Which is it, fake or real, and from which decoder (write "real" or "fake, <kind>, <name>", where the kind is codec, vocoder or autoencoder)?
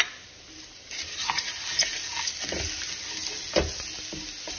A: real